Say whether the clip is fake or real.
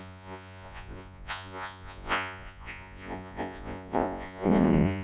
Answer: fake